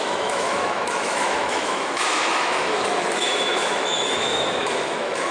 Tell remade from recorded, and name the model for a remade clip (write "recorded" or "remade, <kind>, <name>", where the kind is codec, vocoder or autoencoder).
remade, autoencoder, DAC-VAE